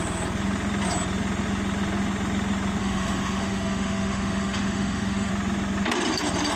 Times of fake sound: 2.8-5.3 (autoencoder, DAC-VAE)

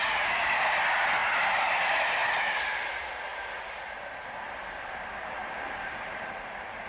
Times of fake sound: 5.4-6.9 (vocoder, BigVGAN v2)

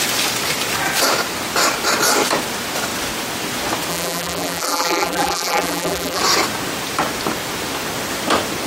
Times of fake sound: 3.9-6.2 (vocoder, BigVGAN v2)

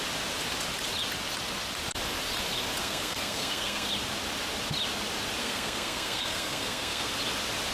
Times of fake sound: 2.8-3.9 (codec, SNAC); 5.4-7.1

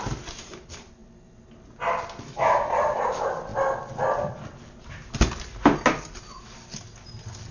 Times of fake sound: none

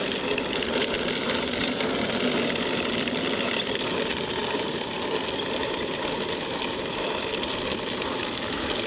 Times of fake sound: none

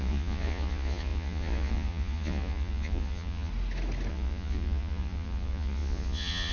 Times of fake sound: 0.0-3.5 (vocoder, Vocos); 4.1-6.5